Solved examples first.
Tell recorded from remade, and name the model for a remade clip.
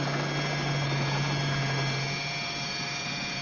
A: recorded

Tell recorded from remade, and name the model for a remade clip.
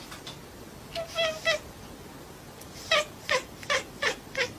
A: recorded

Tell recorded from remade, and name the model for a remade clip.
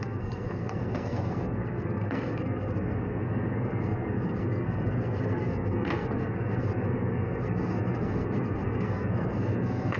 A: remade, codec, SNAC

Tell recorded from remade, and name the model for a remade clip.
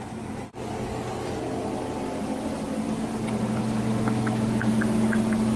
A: recorded